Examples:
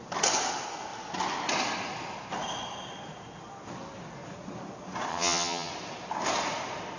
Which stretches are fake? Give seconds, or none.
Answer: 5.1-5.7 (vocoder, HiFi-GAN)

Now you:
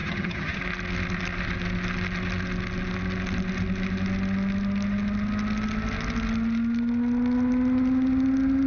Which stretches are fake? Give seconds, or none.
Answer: 0.0-0.6 (vocoder, HiFi-GAN)

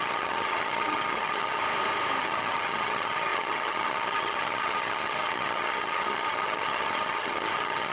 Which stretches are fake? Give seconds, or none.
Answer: 0.0-1.6 (vocoder, HiFi-GAN); 2.2-7.9

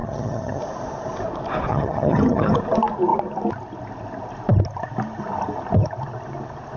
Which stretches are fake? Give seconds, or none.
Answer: 0.0-0.6 (vocoder, HiFi-GAN); 1.7-2.6

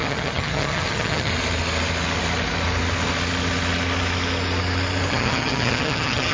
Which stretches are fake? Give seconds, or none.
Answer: 0.0-1.3 (vocoder, HiFi-GAN); 5.1-6.3

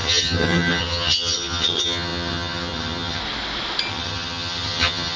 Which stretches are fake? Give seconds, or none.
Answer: 0.0-3.2 (vocoder, HiFi-GAN); 3.9-5.2